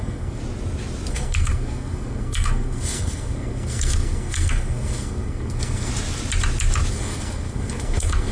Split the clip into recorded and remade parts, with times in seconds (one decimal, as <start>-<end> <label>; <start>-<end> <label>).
0.0-0.4 remade; 0.4-1.1 recorded; 1.1-5.9 remade; 5.9-6.9 recorded; 6.9-8.3 remade